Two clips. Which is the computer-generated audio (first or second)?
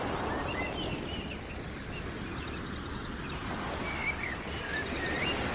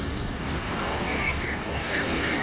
second